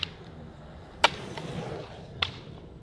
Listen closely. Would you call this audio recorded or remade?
recorded